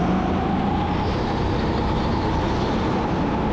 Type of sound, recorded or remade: recorded